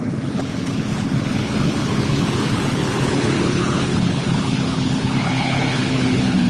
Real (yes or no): no